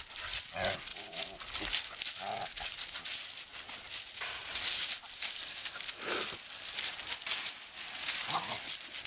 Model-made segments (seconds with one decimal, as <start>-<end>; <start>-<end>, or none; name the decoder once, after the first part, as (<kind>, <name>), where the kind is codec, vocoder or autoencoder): none